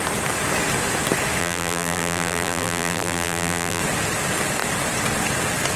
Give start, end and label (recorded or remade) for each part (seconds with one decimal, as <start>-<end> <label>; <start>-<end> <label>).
0.0-1.4 recorded; 1.4-3.8 remade; 3.8-5.8 recorded

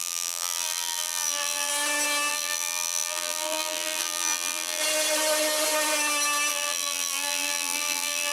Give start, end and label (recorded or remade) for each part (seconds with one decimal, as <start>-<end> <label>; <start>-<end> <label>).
0.0-1.7 remade; 1.7-2.3 recorded; 2.3-4.8 remade; 4.8-6.5 recorded; 6.5-8.3 remade

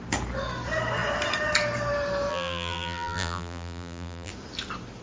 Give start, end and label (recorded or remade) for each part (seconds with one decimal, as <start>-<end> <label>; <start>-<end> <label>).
0.0-2.3 recorded; 2.3-4.3 remade; 4.3-5.0 recorded

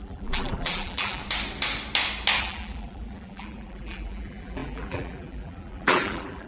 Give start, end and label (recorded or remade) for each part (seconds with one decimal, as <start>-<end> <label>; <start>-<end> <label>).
0.0-1.2 remade; 1.2-2.4 recorded; 2.4-6.5 remade